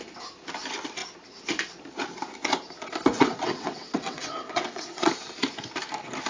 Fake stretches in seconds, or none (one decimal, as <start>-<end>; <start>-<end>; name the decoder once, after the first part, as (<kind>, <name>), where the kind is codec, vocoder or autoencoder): 3.1-5.1 (vocoder, WaveNeXt)